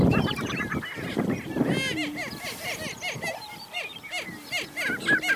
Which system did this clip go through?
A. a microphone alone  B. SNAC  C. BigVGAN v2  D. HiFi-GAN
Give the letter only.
A